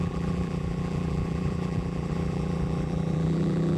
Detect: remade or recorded remade